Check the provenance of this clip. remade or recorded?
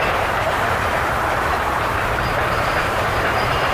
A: remade